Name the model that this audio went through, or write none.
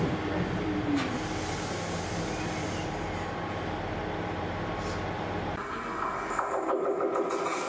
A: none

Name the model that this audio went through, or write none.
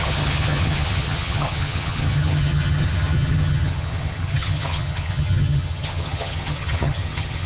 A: vocoder, HiFi-GAN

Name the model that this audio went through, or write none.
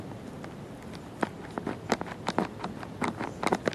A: none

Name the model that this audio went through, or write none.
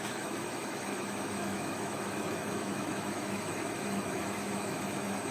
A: autoencoder, DAC-VAE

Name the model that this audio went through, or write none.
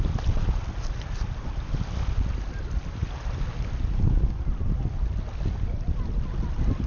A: none